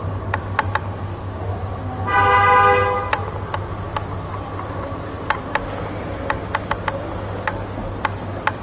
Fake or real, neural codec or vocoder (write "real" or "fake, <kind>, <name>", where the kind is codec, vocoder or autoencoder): real